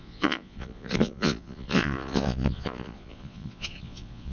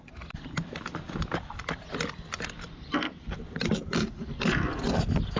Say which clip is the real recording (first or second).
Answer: second